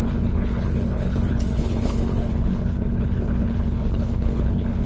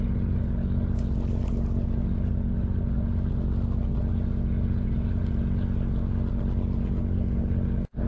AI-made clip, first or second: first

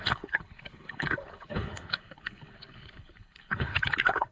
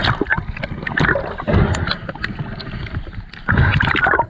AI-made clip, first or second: first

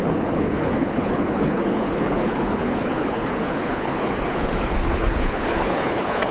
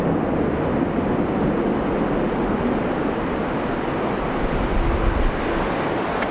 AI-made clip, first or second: first